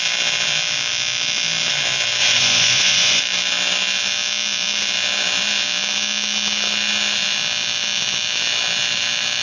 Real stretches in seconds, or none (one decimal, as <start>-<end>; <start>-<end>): 0.0-2.2; 3.2-9.4